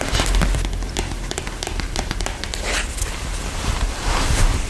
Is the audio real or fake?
fake